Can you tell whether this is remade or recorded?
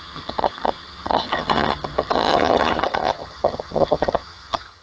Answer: remade